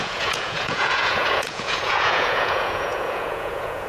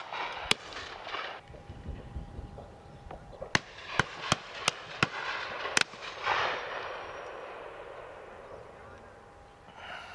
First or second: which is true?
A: second